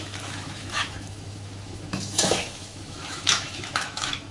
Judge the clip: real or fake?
fake